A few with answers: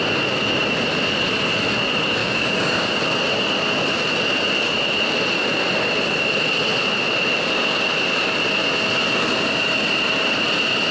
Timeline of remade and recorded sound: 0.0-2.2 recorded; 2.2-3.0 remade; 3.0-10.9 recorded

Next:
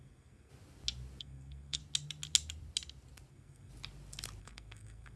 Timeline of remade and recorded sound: 0.0-0.5 remade; 0.5-1.2 recorded; 1.2-1.8 remade; 1.8-3.3 recorded; 3.3-3.7 remade; 3.7-4.4 recorded; 4.4-5.2 remade

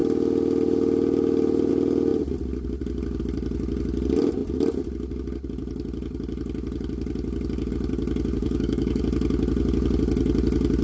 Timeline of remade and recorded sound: 0.0-8.4 recorded; 8.4-9.0 remade; 9.0-10.8 recorded